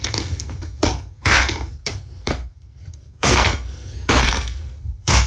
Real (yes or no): no